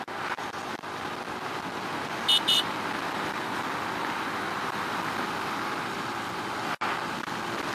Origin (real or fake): real